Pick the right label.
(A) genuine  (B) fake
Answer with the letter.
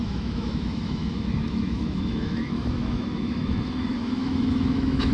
B